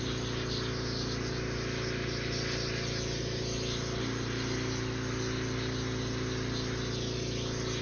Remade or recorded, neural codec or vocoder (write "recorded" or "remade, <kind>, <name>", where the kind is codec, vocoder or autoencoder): recorded